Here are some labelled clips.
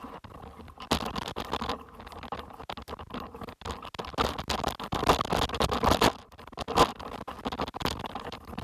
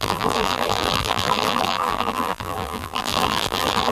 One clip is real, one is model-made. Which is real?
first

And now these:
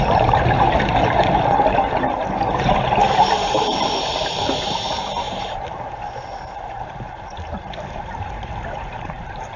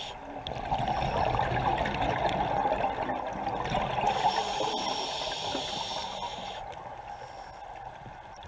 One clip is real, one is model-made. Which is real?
second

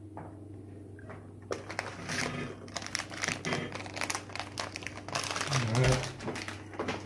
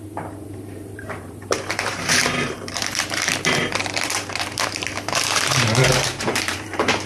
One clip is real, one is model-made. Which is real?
first